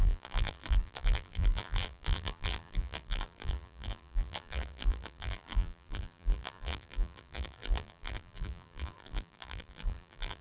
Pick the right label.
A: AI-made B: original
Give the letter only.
A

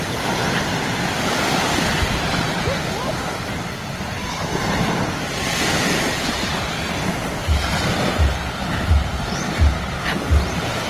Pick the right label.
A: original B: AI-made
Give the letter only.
A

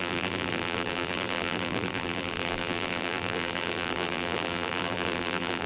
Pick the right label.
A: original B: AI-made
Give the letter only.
B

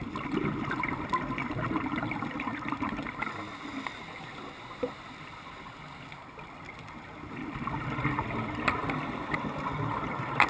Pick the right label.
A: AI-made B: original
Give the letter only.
B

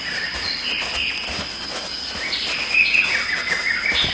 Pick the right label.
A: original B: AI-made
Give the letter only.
A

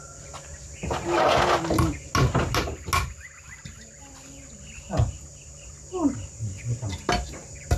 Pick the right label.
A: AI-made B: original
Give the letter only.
B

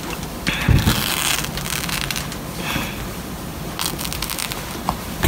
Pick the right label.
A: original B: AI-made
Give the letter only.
A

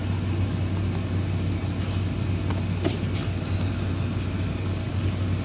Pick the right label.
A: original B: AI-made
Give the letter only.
A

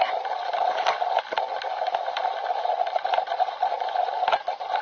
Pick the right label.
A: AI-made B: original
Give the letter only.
B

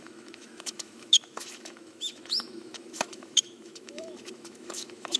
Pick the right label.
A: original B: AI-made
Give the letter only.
B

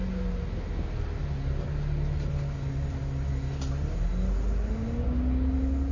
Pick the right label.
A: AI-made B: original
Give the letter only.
B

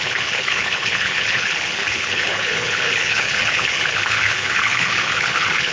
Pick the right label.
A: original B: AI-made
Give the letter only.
B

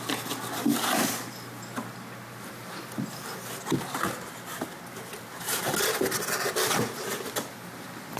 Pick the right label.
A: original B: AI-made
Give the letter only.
A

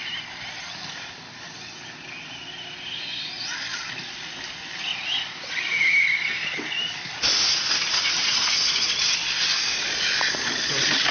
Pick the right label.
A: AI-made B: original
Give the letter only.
B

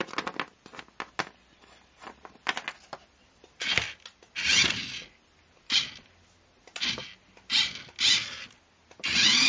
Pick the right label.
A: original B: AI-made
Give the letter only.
A